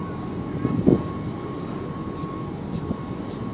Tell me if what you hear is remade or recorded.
recorded